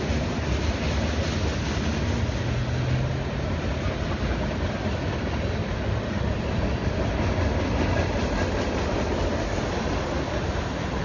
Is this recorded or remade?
recorded